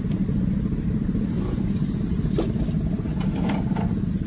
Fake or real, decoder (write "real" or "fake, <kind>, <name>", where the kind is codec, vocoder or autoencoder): real